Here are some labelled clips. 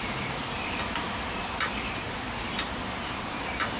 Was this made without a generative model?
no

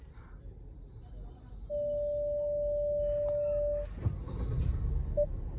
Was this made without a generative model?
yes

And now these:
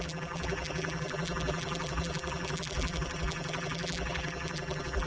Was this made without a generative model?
no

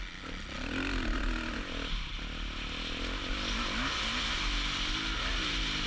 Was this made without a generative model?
yes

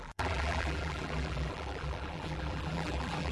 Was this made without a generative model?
no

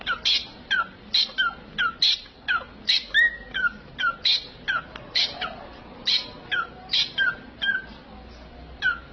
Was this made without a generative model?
yes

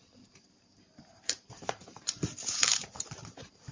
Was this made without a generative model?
no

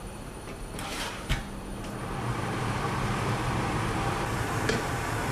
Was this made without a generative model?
no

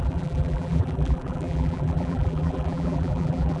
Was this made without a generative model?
no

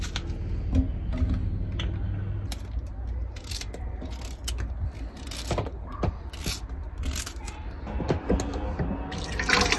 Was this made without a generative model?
yes